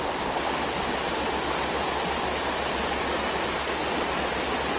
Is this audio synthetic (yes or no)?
no